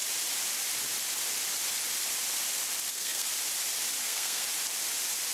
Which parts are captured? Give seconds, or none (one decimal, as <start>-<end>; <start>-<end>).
0.0-2.9; 3.3-4.0; 4.4-5.3